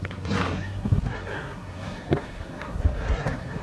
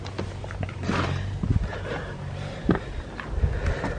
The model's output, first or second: first